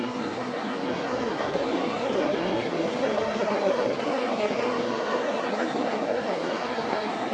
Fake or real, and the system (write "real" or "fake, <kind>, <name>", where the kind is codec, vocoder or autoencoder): fake, codec, SNAC